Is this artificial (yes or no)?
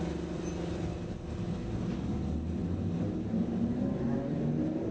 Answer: no